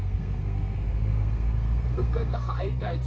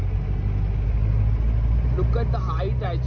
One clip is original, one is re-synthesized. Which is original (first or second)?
second